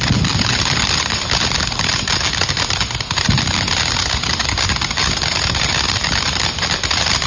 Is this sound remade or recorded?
recorded